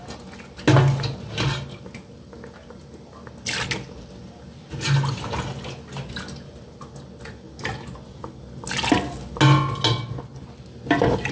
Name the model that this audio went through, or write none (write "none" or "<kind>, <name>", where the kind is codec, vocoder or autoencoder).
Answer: none